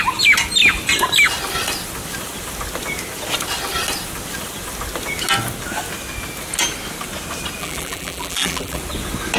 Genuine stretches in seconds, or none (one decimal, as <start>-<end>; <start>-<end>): 0.0-7.6; 8.8-9.4